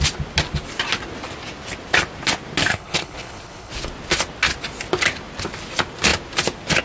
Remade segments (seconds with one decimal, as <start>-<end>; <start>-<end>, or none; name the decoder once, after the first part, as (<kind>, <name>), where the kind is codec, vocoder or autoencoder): 2.7-3.7 (codec, HILCodec)